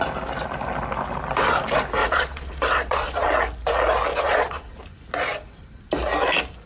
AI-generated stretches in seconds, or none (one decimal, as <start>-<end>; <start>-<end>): 2.0-3.3; 4.1-4.8